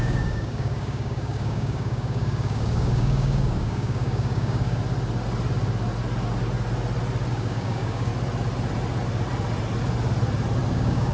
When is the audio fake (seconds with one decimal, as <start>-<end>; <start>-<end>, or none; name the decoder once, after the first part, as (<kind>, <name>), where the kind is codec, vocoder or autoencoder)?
0.0-4.8 (codec, DAC); 7.3-8.1; 10.7-11.1